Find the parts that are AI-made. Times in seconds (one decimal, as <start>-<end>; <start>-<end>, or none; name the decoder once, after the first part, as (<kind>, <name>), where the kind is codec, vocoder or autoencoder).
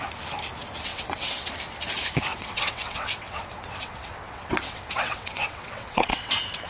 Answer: 0.9-1.5 (vocoder, WaveNeXt); 2.3-6.3